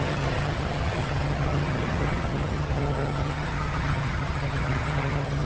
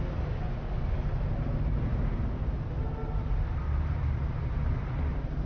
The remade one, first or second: first